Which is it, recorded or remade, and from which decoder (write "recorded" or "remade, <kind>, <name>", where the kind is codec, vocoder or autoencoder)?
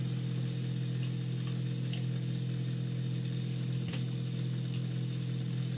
recorded